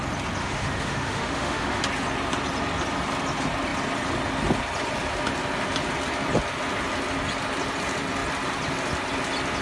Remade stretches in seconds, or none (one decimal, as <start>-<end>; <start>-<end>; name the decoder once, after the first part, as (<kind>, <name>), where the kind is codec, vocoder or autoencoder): 0.4-1.8 (autoencoder, DAC-VAE)

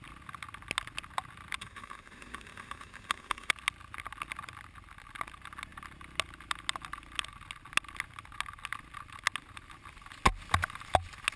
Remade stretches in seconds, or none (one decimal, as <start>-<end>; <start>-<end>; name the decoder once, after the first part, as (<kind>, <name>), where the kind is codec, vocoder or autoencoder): 1.6-3.5 (autoencoder, DAC-VAE)

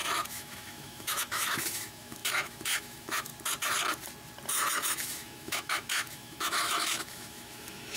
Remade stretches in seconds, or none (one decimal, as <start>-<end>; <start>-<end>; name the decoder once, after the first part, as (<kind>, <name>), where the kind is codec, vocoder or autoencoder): 0.0-3.3 (autoencoder, DAC-VAE); 4.7-8.0

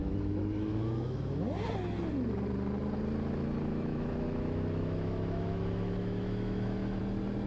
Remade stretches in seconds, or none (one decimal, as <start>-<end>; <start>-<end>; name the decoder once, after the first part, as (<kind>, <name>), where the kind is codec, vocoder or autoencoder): 0.0-1.5 (autoencoder, DAC-VAE); 3.7-7.0

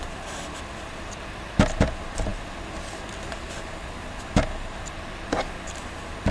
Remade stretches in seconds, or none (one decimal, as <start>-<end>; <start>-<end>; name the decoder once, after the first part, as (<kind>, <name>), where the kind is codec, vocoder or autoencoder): none

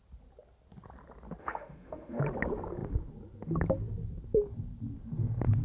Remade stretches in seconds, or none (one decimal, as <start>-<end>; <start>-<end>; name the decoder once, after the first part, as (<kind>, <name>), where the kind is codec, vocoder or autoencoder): 1.4-2.2 (autoencoder, DAC-VAE)

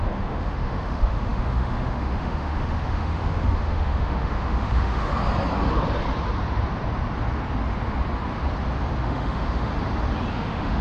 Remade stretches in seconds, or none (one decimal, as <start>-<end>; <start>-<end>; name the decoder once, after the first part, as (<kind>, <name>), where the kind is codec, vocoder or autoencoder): 0.0-5.1 (autoencoder, DAC-VAE); 9.0-9.7; 10.3-10.8